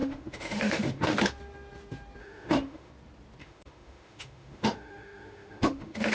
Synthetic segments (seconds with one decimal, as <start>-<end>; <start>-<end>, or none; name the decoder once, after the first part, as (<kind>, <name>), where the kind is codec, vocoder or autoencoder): 0.0-1.2 (autoencoder, DAC-VAE); 2.2-2.9; 3.4-6.1